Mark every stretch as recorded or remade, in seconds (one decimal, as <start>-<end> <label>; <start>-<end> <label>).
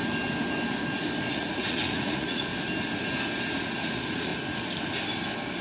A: 0.0-1.3 recorded; 1.3-2.5 remade; 2.5-3.6 recorded; 3.6-4.3 remade; 4.3-5.6 recorded